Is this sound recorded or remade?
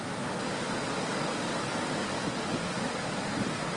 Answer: recorded